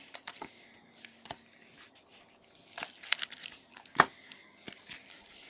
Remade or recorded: remade